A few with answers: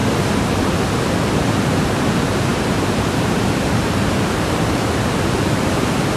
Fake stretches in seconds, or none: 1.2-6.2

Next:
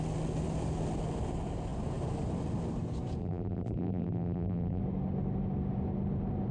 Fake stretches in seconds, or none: 3.2-4.8

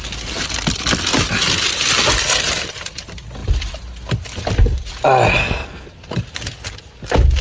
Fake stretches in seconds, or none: 5.4-5.9

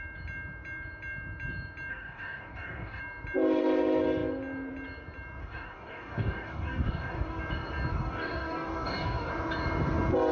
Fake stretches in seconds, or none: 1.9-3.0; 5.4-7.4; 7.9-9.3

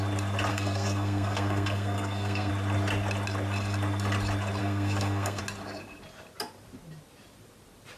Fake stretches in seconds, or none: 0.5-2.5; 4.6-5.4

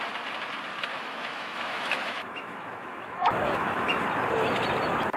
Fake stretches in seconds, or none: 0.9-4.0

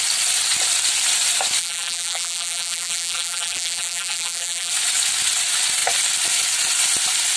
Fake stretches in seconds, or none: 1.6-4.7